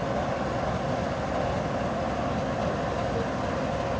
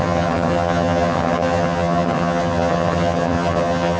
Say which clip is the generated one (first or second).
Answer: second